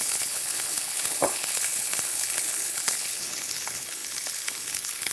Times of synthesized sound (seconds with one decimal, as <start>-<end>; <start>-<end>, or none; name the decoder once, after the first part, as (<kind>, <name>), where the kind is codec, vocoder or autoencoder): 0.0-5.1 (codec, HILCodec)